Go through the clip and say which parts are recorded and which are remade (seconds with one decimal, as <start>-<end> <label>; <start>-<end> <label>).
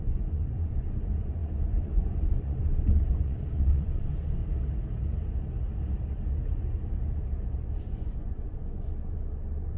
0.0-4.4 remade; 4.4-7.8 recorded; 7.8-9.8 remade